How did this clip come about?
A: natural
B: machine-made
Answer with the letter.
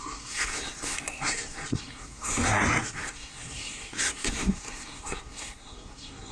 B